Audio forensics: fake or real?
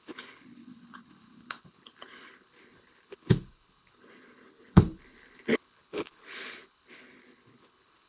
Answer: fake